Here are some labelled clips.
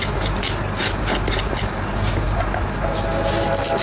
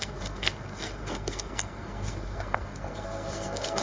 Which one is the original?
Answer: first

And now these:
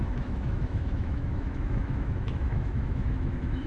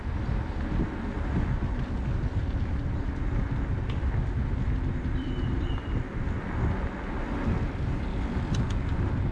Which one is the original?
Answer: second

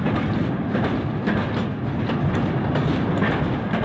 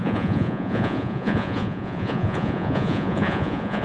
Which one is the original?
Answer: first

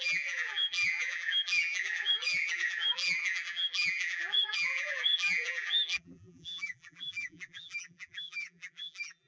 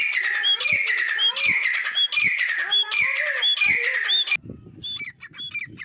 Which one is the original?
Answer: second